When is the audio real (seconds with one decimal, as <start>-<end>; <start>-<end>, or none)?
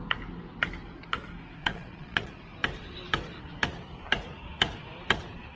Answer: 0.0-1.6; 2.3-5.6